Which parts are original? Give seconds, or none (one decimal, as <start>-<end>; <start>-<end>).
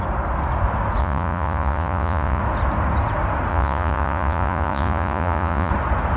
0.0-1.0; 2.4-3.5; 5.7-6.2